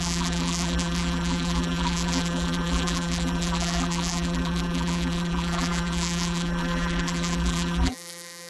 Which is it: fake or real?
fake